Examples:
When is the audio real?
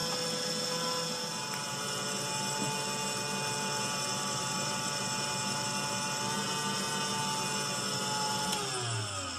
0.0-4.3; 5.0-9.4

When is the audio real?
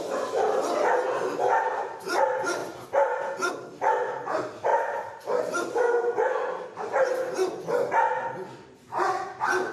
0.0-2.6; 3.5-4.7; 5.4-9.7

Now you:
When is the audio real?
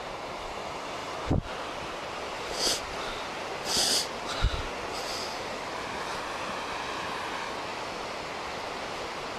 0.0-1.0; 6.1-7.7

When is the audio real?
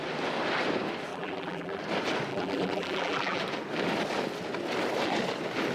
0.0-1.1; 1.8-2.3; 3.4-5.7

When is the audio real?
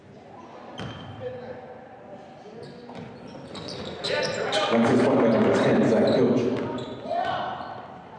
0.0-4.9; 6.2-8.2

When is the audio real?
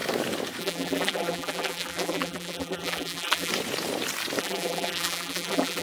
0.0-0.6; 3.5-4.4